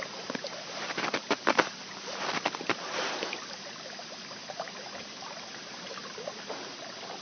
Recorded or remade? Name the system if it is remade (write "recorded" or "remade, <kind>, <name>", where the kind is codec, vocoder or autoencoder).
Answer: recorded